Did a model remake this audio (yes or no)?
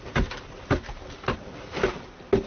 no